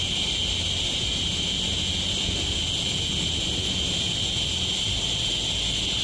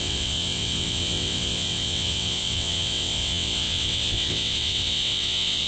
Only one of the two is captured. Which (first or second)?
first